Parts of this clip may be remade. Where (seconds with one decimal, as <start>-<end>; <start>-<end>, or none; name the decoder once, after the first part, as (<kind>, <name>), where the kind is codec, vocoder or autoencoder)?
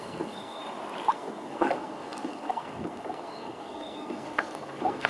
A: 0.0-0.6 (codec, SNAC); 1.1-5.1